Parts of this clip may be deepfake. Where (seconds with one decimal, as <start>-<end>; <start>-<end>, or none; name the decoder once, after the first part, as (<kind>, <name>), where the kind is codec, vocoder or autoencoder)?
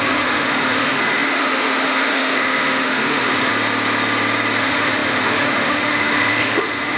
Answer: 0.0-3.5 (autoencoder, DAC-VAE); 4.6-7.0